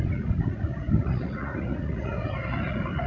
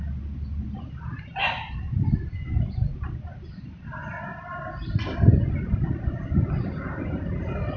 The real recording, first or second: second